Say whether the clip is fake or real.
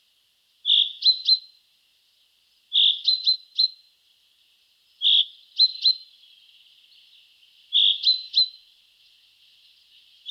real